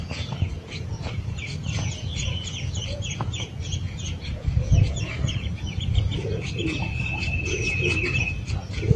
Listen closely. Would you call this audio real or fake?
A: fake